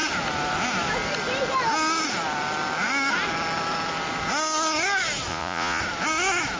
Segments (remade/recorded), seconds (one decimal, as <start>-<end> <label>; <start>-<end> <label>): 0.0-5.3 recorded; 5.3-5.8 remade; 5.8-6.6 recorded